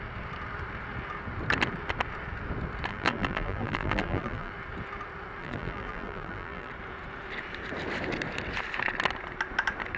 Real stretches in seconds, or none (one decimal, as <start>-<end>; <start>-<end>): 0.0-2.9; 4.5-5.4; 6.7-10.0